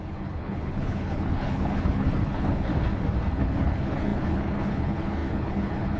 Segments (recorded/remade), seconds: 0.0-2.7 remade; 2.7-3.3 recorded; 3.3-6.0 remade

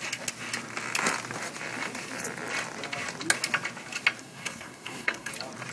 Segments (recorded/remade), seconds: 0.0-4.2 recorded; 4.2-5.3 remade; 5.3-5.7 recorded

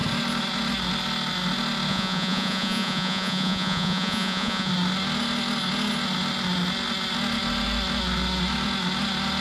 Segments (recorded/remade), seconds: 0.0-1.9 recorded; 1.9-4.7 remade; 4.7-9.4 recorded